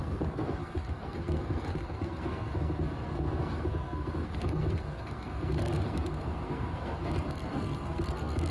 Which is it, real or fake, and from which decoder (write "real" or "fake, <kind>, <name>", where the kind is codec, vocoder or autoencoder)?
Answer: fake, codec, SNAC